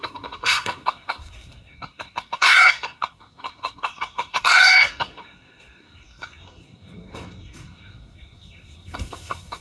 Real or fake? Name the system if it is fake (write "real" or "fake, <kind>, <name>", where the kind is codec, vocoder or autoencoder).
fake, codec, SNAC